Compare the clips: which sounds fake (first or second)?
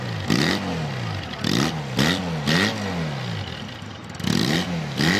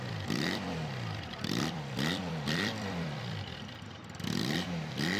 second